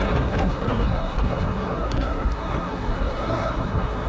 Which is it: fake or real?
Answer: fake